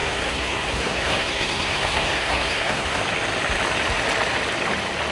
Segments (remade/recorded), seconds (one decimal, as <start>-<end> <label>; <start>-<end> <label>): 0.0-3.0 remade; 3.0-5.1 recorded